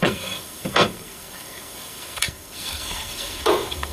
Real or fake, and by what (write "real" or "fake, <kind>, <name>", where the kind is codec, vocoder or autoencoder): fake, codec, SNAC